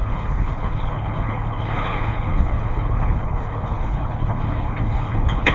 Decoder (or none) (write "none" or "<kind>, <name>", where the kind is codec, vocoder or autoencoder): codec, HILCodec